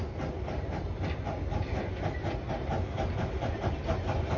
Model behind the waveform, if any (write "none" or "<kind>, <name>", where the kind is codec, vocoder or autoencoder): none